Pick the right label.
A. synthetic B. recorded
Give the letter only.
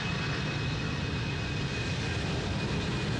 B